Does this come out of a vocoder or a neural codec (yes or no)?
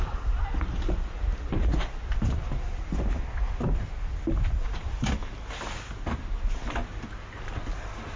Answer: no